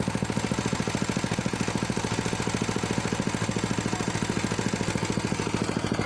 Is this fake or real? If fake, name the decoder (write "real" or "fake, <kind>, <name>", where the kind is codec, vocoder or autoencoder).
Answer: real